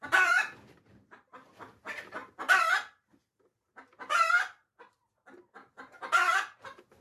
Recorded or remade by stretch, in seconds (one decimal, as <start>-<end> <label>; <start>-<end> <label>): 0.0-7.0 recorded